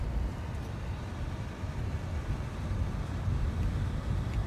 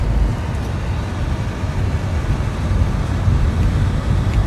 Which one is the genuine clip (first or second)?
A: second